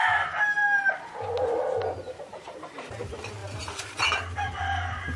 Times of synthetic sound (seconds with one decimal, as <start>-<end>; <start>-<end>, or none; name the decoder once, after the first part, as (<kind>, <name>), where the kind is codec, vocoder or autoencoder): 0.0-0.6 (vocoder, BigVGAN v2); 2.0-5.2